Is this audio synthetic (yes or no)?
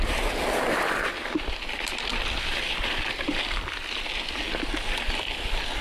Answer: yes